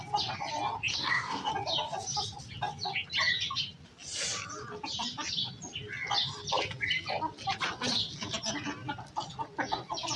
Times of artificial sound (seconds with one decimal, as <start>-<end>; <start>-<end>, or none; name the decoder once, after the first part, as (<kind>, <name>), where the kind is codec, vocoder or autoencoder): 0.9-1.5 (codec, SNAC)